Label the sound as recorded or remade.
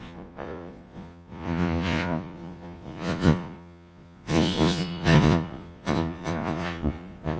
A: remade